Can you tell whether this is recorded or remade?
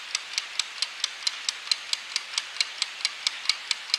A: recorded